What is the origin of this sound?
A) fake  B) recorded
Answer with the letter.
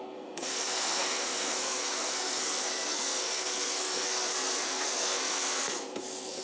A